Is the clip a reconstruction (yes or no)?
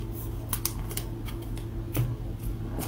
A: no